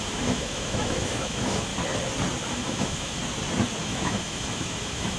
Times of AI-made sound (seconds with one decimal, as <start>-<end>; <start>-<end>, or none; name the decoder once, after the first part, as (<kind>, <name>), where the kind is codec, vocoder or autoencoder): 0.0-1.7 (autoencoder, DAC-VAE); 2.5-3.2; 3.8-5.2